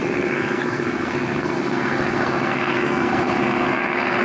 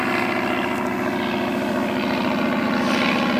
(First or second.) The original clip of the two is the second